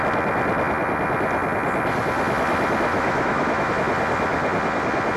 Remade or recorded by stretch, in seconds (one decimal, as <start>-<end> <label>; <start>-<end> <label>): 0.0-2.9 recorded; 2.9-3.7 remade; 3.7-5.2 recorded